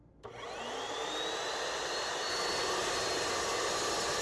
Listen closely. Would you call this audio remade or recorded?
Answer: recorded